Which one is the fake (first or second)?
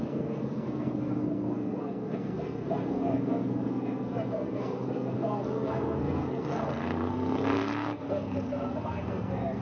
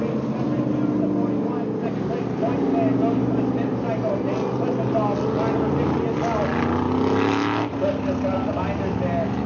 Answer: first